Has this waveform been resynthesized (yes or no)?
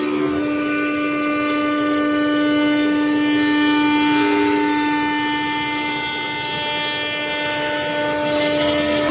no